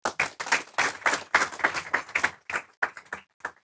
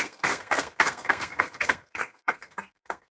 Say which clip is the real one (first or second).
first